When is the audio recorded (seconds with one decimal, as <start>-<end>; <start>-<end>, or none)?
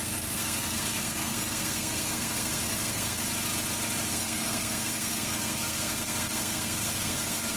3.2-4.1